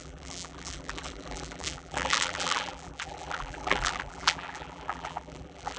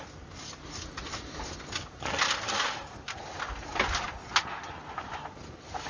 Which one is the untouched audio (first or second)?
second